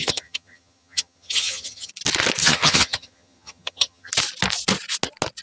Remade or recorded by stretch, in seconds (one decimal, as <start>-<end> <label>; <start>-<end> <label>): 0.0-1.9 remade; 1.9-2.4 recorded; 2.4-4.1 remade; 4.1-5.4 recorded